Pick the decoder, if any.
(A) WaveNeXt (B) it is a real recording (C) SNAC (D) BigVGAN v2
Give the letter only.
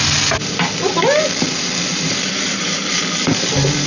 B